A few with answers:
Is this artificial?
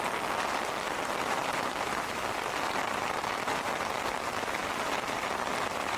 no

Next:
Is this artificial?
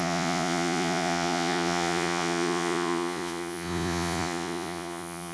yes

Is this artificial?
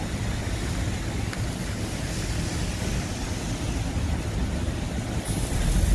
no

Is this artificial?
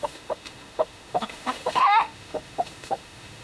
yes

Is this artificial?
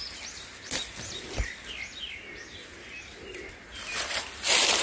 no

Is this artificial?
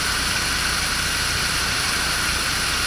no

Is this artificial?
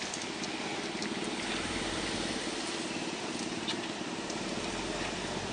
no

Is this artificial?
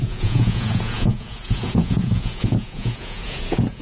yes